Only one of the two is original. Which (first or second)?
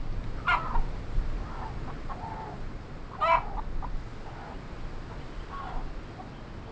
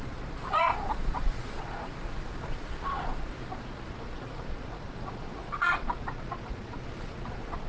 first